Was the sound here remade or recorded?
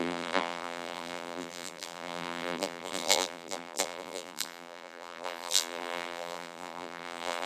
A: remade